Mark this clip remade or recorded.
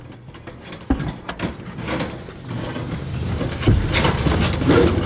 recorded